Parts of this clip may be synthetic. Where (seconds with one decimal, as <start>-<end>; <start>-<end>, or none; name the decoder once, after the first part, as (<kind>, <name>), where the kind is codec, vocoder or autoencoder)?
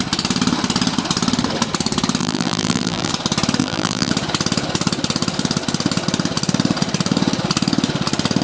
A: 2.2-3.1 (vocoder, BigVGAN v2); 3.6-4.1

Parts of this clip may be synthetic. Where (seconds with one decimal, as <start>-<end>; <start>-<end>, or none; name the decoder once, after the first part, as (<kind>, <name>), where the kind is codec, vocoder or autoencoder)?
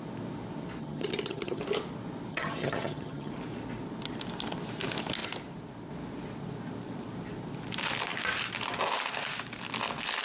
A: 0.8-1.6 (vocoder, HiFi-GAN); 2.3-3.3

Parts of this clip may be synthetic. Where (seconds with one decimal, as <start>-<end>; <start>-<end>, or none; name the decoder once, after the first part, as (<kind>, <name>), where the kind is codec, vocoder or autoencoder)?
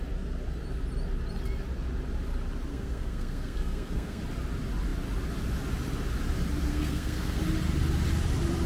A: 2.7-4.2 (codec, SNAC); 6.7-7.4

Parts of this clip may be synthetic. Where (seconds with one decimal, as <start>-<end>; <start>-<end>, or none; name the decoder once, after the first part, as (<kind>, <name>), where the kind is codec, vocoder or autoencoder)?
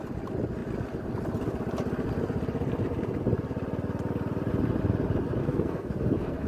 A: 5.4-6.5 (codec, SNAC)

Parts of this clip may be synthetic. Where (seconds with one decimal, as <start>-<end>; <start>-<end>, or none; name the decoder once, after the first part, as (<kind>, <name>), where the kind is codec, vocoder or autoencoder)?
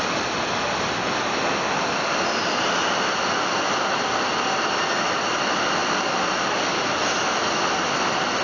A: none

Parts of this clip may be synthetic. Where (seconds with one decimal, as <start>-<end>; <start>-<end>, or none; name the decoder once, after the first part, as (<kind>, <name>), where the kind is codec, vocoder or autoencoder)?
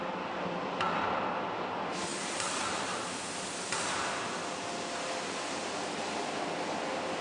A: none